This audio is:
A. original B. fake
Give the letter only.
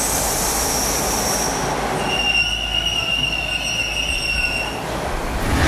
A